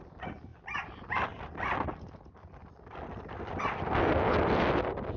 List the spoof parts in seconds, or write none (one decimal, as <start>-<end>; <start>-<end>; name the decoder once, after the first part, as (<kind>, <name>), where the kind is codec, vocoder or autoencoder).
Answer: none